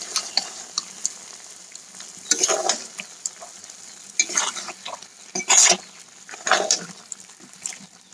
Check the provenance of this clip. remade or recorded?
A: recorded